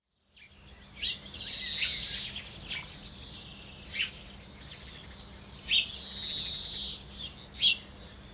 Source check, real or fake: real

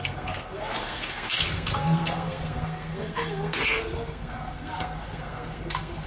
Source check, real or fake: fake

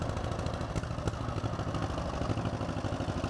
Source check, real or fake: real